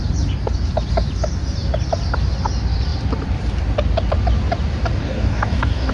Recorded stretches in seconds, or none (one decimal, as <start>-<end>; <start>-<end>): 0.0-5.0